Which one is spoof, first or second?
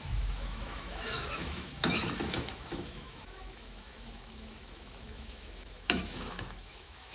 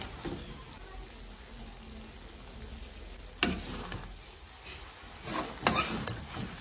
first